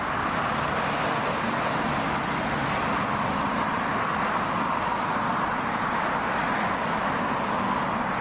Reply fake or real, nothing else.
real